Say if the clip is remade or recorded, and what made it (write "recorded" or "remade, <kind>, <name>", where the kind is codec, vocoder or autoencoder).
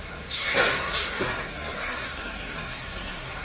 remade, codec, SNAC